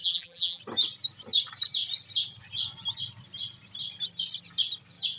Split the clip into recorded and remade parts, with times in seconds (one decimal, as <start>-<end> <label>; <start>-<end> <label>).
0.0-0.6 remade; 0.6-5.2 recorded